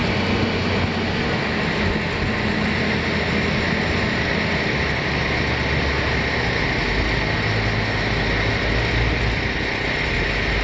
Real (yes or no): yes